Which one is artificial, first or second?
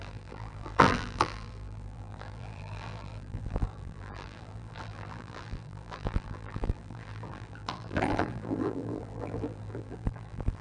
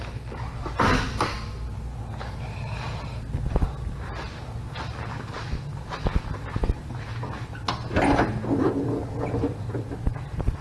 first